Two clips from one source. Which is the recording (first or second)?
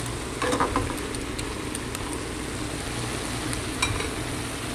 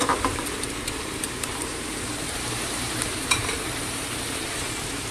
first